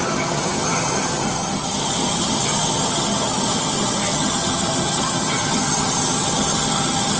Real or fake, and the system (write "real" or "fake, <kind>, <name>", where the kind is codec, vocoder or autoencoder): fake, vocoder, HiFi-GAN